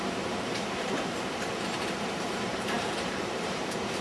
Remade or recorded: remade